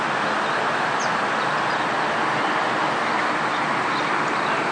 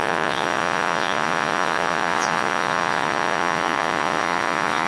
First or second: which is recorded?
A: first